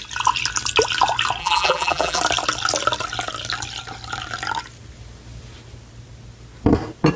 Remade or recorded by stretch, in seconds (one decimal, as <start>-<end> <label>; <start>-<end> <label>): 0.0-1.4 recorded; 1.4-2.2 remade; 2.2-7.2 recorded